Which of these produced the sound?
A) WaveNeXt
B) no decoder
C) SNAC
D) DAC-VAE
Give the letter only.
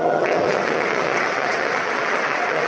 A